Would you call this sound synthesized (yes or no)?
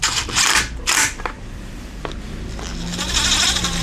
no